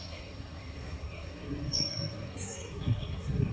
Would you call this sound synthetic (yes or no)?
yes